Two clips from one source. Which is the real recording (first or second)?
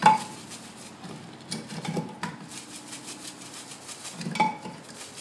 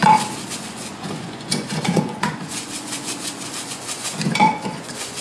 first